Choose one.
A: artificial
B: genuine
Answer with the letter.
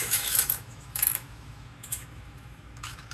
A